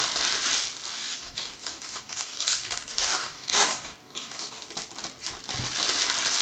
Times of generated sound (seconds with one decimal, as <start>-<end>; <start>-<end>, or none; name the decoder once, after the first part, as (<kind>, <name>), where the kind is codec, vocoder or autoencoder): 0.9-4.7 (codec, DAC)